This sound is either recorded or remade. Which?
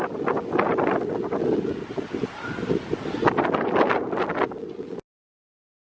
recorded